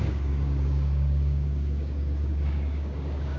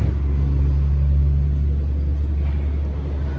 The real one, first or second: second